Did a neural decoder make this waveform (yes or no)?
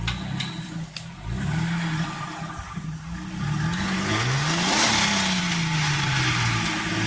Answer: no